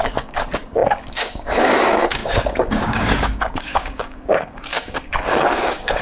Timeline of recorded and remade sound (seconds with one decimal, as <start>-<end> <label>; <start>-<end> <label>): 0.0-6.0 remade